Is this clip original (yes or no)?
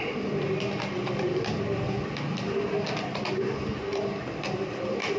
yes